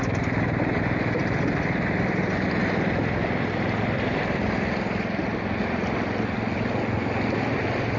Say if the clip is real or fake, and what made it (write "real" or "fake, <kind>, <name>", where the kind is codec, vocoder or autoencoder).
real